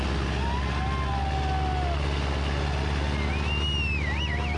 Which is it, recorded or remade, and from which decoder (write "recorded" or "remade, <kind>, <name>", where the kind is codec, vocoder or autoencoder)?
recorded